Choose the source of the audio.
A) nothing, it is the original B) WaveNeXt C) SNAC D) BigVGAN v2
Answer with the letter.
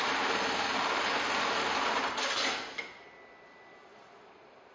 A